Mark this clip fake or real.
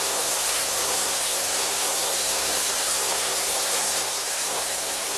fake